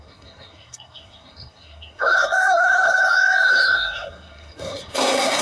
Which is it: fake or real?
fake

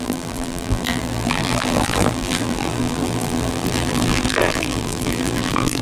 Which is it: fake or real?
fake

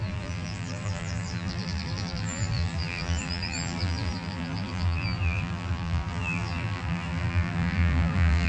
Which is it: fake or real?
fake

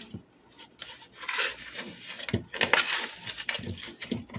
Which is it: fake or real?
real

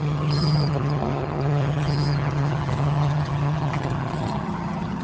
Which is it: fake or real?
fake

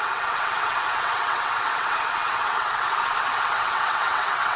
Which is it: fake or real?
fake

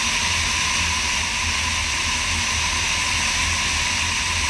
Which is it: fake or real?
real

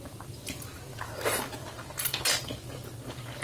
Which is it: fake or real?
real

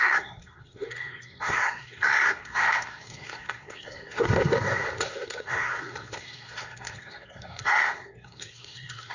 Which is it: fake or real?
fake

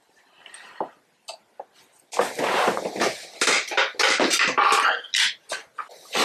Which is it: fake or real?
real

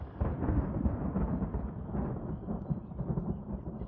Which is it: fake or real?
real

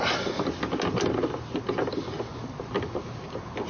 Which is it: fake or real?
real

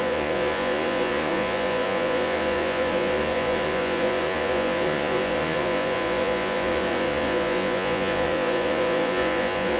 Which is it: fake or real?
fake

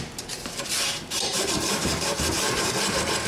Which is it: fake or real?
fake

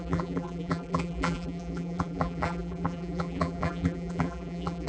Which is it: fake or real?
fake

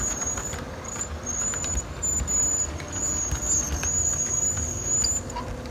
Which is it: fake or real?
real